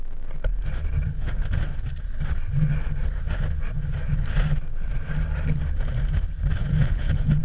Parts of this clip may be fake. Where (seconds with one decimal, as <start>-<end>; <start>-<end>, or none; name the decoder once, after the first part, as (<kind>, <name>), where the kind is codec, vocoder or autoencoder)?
6.6-7.4 (vocoder, Vocos)